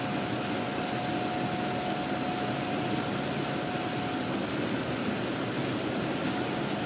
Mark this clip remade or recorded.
recorded